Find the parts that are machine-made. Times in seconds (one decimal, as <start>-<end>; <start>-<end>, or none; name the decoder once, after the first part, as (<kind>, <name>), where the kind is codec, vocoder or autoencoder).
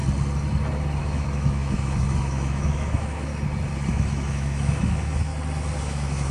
1.0-3.3 (autoencoder, DAC-VAE); 3.9-5.3; 5.8-6.3